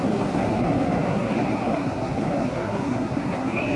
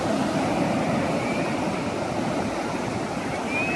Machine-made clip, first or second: first